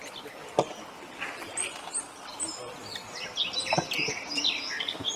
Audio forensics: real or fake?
real